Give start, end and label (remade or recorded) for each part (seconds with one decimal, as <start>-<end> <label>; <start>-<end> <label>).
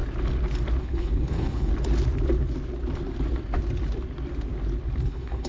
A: 0.0-0.8 recorded; 0.8-1.7 remade; 1.7-5.0 recorded; 5.0-5.5 remade